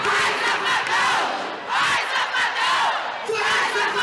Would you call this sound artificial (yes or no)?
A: no